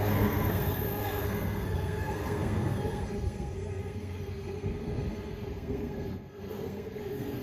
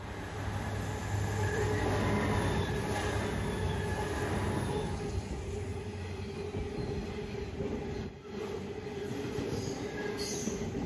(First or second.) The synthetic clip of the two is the first